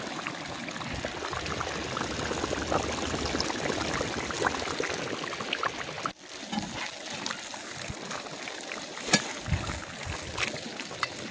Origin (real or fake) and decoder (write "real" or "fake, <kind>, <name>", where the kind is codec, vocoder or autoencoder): real